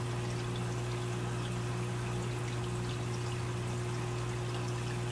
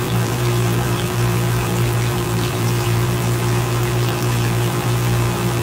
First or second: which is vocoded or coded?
second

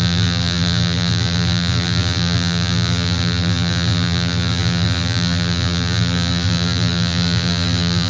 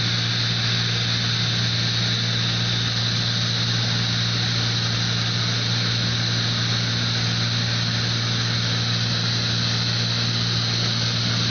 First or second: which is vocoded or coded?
first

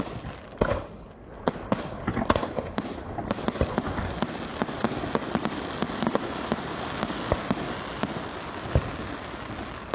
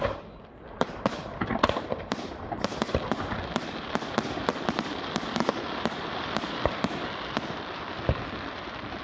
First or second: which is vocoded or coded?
second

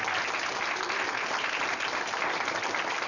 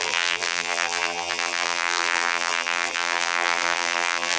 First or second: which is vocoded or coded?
second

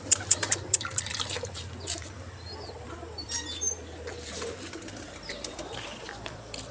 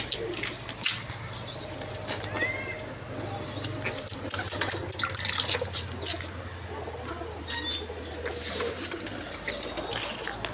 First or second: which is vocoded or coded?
first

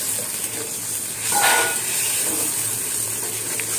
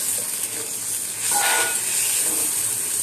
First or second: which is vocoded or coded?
first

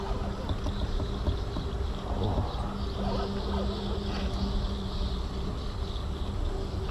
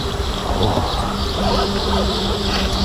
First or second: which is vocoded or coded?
second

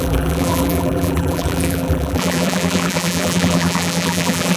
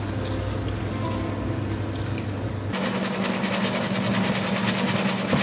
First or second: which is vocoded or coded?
first